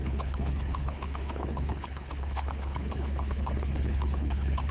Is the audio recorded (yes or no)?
no